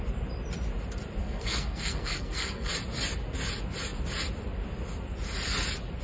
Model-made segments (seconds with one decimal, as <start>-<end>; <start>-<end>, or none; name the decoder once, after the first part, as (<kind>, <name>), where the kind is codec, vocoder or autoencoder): 1.2-2.7 (codec, SNAC)